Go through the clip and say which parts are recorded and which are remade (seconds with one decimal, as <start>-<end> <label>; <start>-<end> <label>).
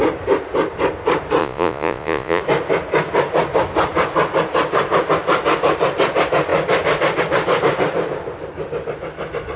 0.0-1.4 recorded; 1.4-2.4 remade; 2.4-9.6 recorded